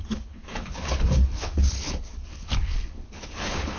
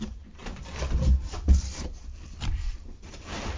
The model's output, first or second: first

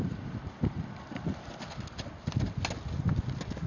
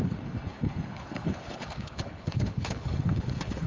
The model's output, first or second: second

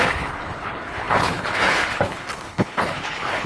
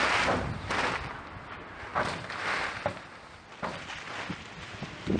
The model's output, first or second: first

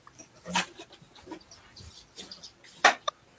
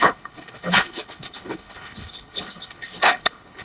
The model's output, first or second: second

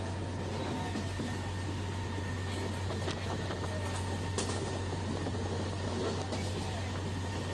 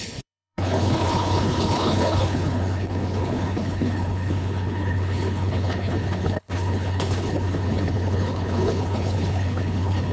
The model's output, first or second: second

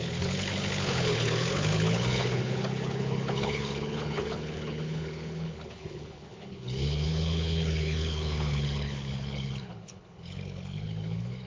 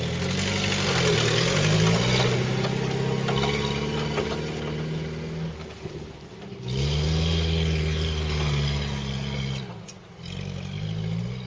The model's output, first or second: first